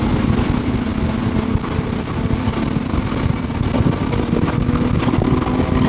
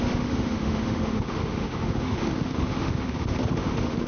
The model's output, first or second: second